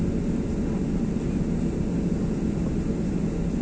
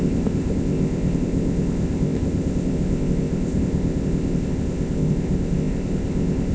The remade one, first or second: second